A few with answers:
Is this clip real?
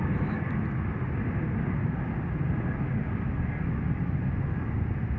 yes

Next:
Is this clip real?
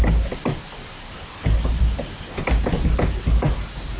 yes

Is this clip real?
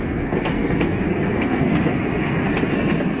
no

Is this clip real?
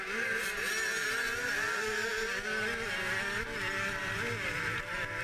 yes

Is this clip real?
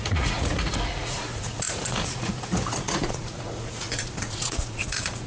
no